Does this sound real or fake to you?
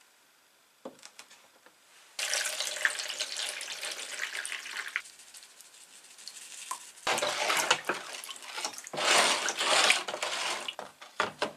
real